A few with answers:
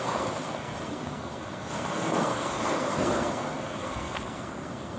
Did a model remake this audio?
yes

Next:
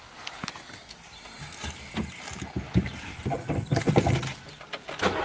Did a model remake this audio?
no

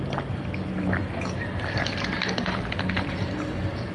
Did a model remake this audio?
no